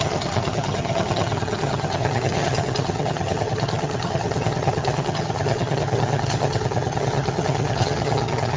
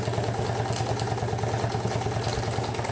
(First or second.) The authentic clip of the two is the second